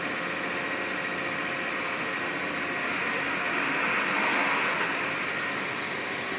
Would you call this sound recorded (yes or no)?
yes